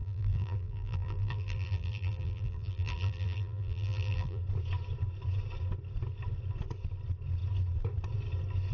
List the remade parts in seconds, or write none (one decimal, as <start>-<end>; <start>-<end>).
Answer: 0.0-4.4